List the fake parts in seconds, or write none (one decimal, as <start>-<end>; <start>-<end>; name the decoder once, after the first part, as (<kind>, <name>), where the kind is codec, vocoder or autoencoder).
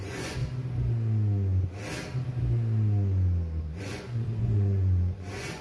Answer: 0.0-0.4 (vocoder, Vocos); 3.8-5.6